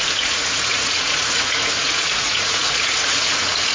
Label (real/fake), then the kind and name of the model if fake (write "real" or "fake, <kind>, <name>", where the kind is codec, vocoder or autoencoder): fake, vocoder, Vocos